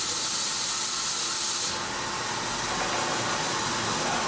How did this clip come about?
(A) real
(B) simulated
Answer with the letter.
A